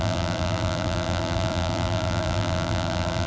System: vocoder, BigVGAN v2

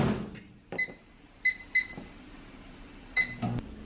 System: none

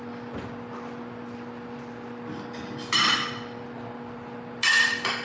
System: none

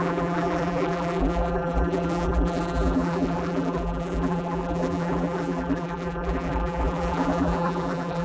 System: vocoder, BigVGAN v2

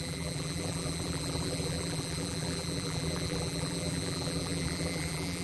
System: vocoder, BigVGAN v2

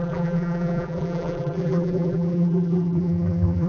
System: vocoder, BigVGAN v2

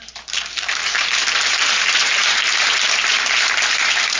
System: vocoder, BigVGAN v2